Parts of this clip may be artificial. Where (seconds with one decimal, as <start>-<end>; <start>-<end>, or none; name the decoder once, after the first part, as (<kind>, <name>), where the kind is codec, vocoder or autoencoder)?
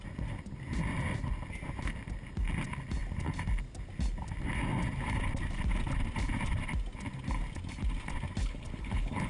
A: 8.4-9.3 (codec, HILCodec)